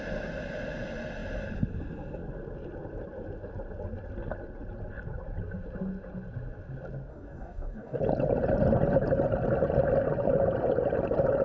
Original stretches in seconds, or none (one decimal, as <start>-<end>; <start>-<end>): 0.0-7.1; 8.0-11.4

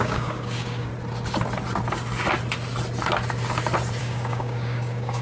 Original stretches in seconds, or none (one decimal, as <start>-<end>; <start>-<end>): 0.9-4.0

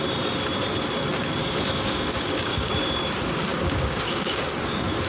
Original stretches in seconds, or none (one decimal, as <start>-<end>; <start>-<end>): 0.0-1.1; 2.7-3.5

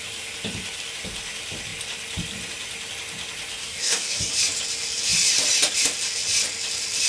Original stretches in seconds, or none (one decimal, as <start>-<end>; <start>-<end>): 0.0-3.6; 4.3-7.1

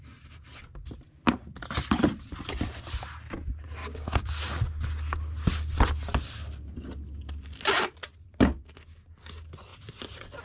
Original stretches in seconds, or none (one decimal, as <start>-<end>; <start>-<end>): 0.0-3.8; 4.4-10.4

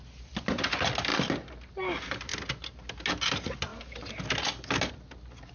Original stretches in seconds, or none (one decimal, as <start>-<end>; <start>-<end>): 0.0-5.5

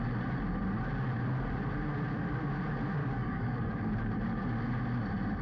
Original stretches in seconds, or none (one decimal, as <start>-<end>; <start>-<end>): 0.0-3.0; 3.8-5.4